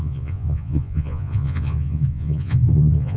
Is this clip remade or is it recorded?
remade